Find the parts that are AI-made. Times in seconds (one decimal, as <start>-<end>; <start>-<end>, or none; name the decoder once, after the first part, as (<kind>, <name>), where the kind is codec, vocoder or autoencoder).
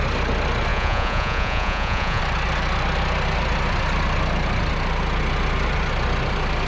0.7-2.2 (vocoder, Vocos)